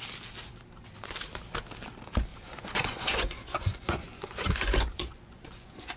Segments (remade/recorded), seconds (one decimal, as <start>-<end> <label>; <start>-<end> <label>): 0.0-2.3 recorded; 2.3-6.0 remade